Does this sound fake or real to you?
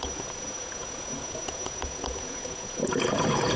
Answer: fake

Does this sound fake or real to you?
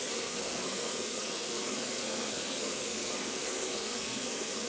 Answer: fake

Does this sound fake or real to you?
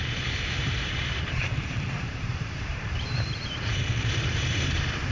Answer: fake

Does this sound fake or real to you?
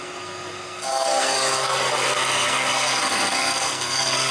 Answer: fake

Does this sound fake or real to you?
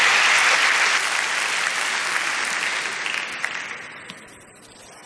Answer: real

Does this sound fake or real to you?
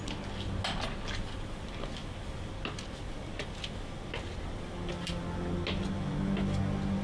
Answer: real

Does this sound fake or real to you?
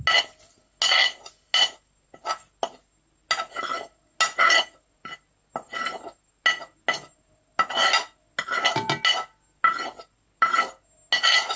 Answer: real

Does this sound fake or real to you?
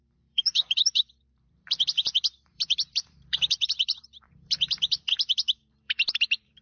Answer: fake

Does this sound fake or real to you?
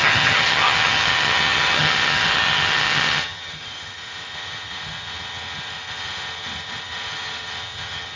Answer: fake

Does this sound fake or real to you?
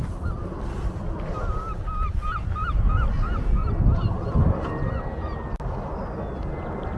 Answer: real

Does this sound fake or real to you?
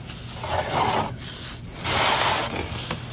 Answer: real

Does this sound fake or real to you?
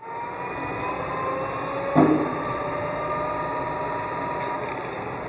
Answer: real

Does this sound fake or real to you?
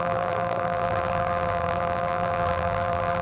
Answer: fake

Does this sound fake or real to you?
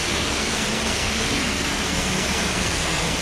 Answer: fake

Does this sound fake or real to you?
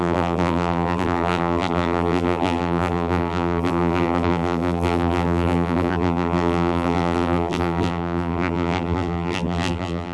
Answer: fake